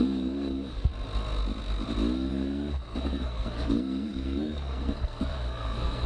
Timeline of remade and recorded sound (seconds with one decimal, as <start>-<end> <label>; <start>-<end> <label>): 0.0-0.9 remade; 0.9-2.3 recorded; 2.3-6.1 remade